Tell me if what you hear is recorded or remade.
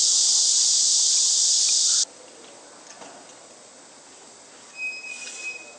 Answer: recorded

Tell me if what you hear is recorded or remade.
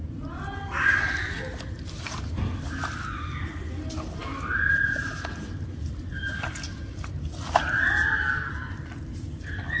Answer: recorded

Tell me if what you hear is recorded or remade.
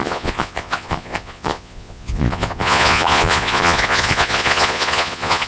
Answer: remade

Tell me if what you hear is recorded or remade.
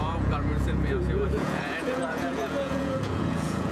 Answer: remade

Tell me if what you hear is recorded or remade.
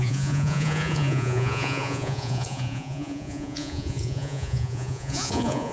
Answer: remade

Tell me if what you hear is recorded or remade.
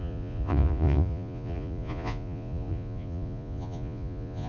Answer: remade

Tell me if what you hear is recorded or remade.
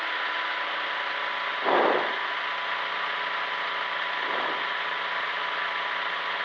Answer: recorded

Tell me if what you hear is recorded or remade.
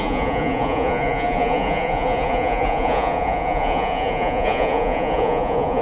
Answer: remade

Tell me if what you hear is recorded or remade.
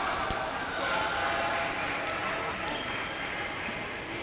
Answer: recorded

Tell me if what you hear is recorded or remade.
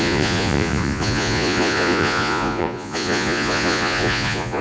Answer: remade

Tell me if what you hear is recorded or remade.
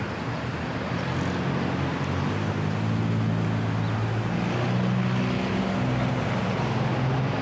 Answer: recorded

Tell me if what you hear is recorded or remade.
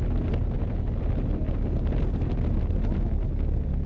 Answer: recorded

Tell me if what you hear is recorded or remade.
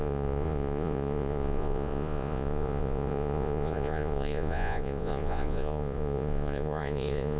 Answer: remade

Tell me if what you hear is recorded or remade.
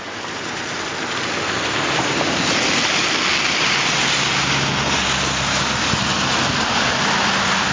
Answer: recorded